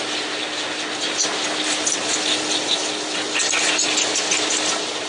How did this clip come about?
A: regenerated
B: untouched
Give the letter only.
B